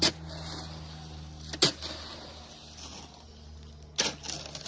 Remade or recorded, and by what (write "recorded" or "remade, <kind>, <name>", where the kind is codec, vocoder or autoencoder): recorded